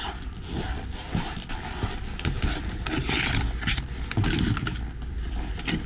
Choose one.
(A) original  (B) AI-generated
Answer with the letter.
A